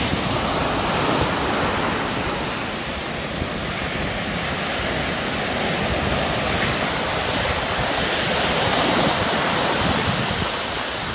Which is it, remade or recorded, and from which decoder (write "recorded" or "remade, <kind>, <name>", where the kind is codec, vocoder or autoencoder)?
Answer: recorded